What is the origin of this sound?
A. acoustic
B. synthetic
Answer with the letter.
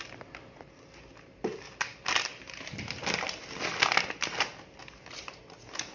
A